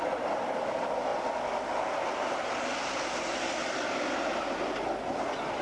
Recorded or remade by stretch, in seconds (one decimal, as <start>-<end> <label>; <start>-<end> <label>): 0.0-5.6 recorded